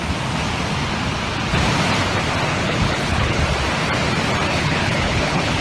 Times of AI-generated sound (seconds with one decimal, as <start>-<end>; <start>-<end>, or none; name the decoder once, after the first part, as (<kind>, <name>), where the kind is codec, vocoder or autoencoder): 2.5-3.4 (codec, HILCodec); 4.5-5.6